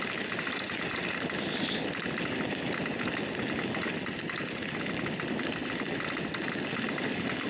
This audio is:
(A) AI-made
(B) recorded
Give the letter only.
B